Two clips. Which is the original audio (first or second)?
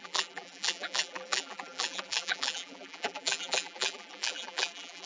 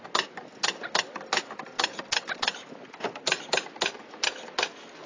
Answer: second